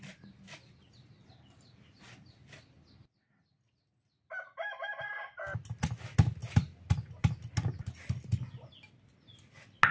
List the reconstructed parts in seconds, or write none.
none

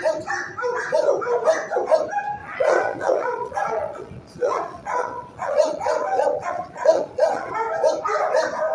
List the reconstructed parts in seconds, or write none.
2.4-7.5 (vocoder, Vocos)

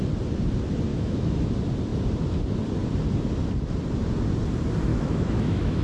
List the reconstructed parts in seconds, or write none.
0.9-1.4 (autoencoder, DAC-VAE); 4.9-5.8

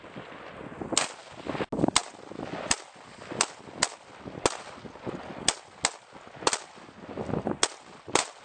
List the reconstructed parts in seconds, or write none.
none

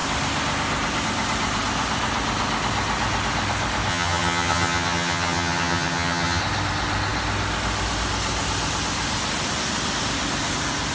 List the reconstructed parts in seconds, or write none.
3.9-6.4 (vocoder, HiFi-GAN)

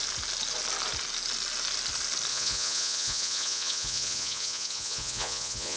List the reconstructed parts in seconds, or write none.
2.3-5.8 (vocoder, Vocos)

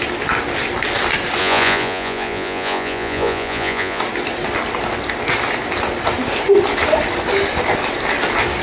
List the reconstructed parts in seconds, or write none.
1.4-4.0 (vocoder, Vocos)

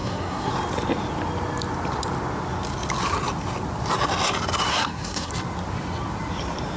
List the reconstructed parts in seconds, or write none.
0.0-0.5 (codec, SNAC); 4.7-5.3